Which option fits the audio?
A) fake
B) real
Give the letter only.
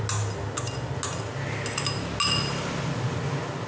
B